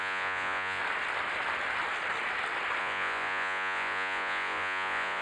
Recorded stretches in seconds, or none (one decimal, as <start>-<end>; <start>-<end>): 0.8-2.8